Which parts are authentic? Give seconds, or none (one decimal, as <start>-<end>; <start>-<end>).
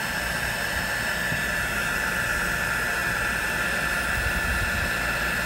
0.0-5.5